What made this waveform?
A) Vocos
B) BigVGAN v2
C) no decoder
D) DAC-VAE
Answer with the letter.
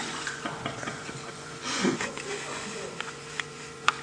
A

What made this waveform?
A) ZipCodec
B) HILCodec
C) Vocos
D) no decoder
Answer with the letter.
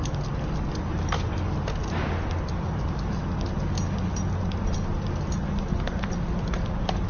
D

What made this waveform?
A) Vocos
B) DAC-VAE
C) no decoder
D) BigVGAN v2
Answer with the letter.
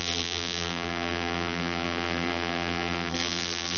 D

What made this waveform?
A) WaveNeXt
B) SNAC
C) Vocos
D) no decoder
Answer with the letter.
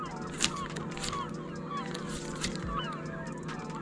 D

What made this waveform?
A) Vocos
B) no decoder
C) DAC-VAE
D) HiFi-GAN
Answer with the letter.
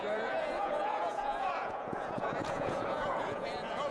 A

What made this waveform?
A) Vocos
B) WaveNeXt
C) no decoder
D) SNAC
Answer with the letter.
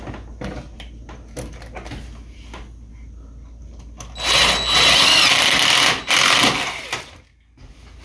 C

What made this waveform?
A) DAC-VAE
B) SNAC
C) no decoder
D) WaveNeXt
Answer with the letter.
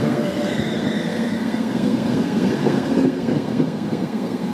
B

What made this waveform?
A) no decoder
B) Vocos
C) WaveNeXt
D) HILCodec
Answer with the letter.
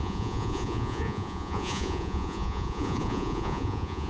B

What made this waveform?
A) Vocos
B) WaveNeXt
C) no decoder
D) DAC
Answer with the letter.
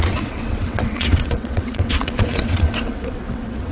B